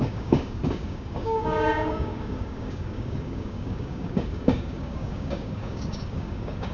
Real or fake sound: fake